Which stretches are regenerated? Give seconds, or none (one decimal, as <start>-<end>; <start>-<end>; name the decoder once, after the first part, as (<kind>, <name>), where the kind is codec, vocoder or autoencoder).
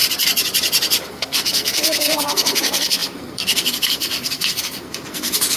1.1-5.6 (codec, SNAC)